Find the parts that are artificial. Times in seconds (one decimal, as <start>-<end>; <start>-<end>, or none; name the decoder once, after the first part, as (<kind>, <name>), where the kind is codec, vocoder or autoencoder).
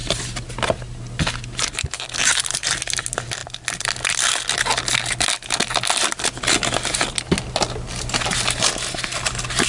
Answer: none